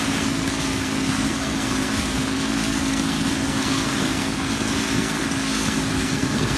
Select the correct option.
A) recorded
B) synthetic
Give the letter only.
B